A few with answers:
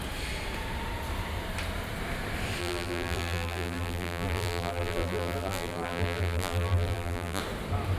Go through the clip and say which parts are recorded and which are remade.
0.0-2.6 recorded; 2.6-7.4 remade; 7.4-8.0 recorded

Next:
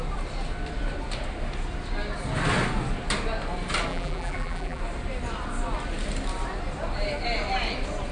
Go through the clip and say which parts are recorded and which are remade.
0.0-3.9 recorded; 3.9-4.8 remade; 4.8-8.1 recorded

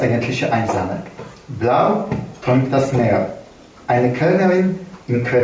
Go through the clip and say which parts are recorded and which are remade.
0.0-5.4 recorded

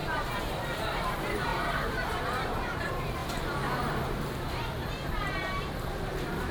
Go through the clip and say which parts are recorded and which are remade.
0.0-6.5 remade